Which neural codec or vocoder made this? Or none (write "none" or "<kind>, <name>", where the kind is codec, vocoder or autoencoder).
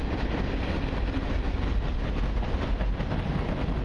vocoder, BigVGAN v2